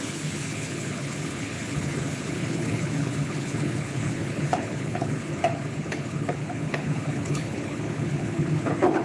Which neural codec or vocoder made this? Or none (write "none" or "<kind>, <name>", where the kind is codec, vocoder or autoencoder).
codec, HILCodec